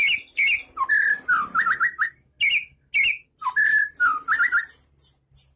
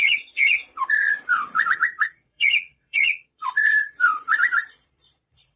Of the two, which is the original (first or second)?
first